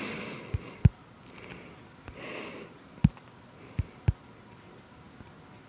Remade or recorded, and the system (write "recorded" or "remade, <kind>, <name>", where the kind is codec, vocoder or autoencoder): recorded